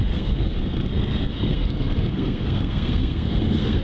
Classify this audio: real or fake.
fake